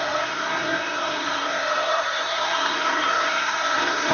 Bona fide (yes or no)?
no